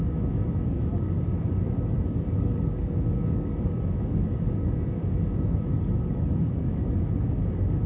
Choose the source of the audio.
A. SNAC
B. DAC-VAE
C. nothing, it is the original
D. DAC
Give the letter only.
D